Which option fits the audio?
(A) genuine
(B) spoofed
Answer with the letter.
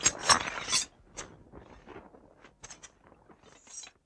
A